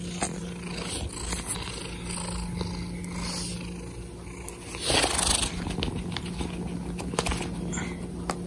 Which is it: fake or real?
real